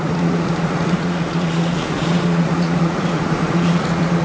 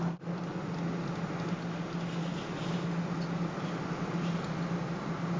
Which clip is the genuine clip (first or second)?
second